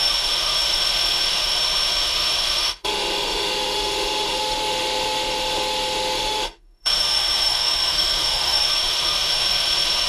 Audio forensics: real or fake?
fake